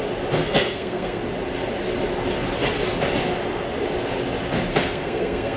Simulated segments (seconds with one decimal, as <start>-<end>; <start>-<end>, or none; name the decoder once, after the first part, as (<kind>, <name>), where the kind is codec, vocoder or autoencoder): 0.4-1.2 (codec, SNAC); 4.7-5.6